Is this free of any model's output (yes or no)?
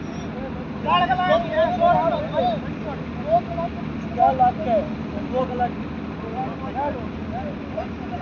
yes